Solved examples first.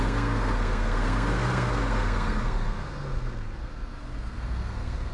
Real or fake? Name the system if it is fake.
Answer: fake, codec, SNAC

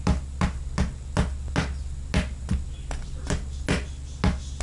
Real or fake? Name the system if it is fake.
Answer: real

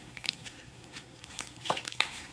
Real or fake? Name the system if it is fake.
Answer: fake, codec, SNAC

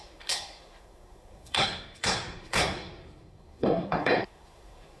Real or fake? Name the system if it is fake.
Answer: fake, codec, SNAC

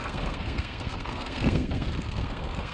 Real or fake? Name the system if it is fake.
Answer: fake, codec, SNAC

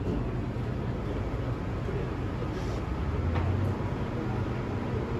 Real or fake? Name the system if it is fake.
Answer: real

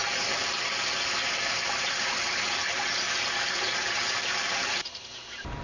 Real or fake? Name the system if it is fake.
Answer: real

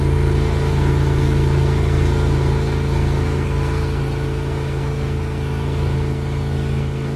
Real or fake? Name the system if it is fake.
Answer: fake, codec, SNAC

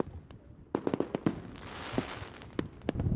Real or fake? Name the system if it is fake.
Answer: real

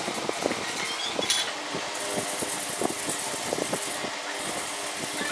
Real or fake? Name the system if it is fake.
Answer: real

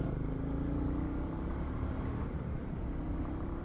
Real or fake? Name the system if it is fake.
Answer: real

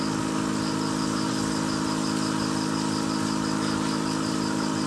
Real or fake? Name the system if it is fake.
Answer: real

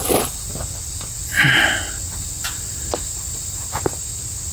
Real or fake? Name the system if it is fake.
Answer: real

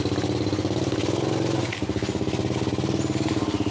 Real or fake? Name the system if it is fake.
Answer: real